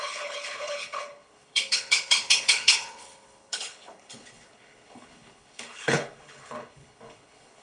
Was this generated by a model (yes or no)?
yes